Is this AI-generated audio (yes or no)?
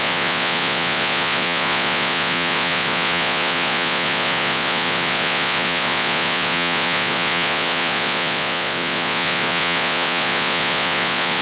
yes